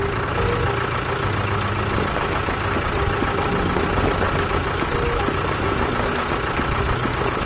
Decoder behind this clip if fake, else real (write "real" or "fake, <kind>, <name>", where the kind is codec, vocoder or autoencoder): real